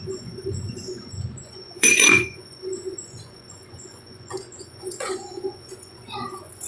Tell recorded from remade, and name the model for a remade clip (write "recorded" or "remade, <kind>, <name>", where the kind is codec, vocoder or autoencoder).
remade, vocoder, Vocos